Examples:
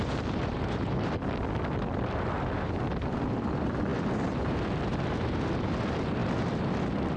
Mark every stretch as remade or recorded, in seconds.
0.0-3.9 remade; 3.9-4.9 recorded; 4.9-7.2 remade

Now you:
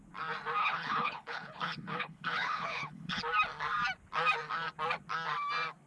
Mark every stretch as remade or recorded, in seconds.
0.0-0.6 recorded; 0.6-3.2 remade; 3.2-5.9 recorded

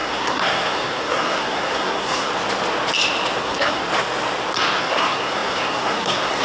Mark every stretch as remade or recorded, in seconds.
0.0-2.3 remade; 2.3-3.4 recorded; 3.4-3.8 remade; 3.8-4.8 recorded; 4.8-6.4 remade

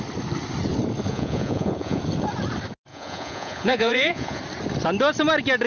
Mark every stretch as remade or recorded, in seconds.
0.0-1.1 recorded; 1.1-2.0 remade; 2.0-2.9 recorded; 2.9-4.4 remade; 4.4-5.7 recorded

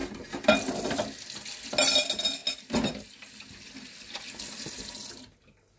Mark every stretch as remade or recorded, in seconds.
0.0-5.8 recorded